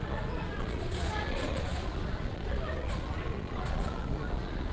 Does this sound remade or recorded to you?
remade